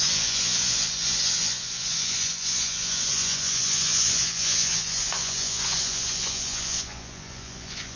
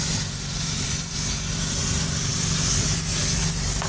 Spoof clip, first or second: first